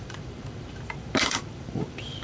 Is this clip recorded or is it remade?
remade